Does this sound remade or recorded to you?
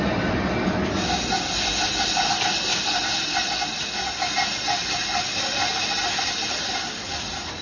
remade